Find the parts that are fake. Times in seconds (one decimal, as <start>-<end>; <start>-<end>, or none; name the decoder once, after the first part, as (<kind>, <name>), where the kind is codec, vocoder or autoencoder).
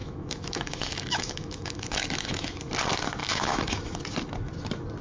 0.0-2.6 (autoencoder, DAC-VAE); 3.2-4.0